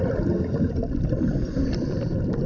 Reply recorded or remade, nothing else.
remade